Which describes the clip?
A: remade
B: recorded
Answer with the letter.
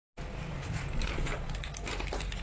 B